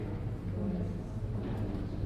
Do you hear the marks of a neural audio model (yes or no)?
no